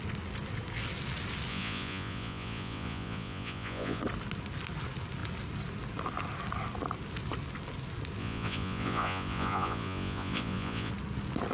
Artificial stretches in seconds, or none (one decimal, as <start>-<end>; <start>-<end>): 1.5-4.0; 8.2-10.9